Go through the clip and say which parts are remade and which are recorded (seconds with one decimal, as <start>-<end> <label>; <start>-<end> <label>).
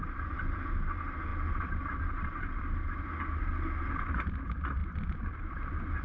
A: 0.0-6.0 recorded